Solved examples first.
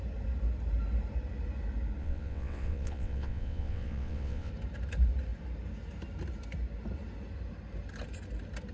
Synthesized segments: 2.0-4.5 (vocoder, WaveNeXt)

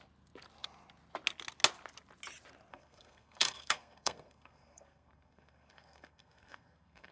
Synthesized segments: 2.7-7.1 (codec, SNAC)

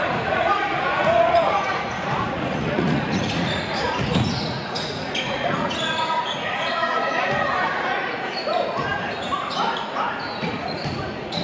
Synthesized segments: 0.0-11.4 (vocoder, Vocos)

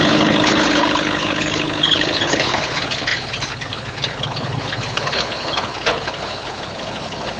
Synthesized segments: 0.0-7.4 (codec, HILCodec)

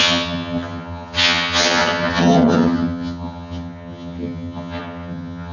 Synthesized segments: 0.0-5.5 (vocoder, HiFi-GAN)

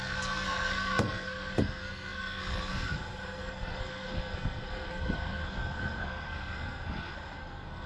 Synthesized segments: 0.0-7.9 (codec, SNAC)

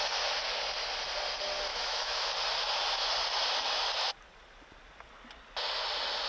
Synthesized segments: 1.7-2.3 (autoencoder, DAC-VAE)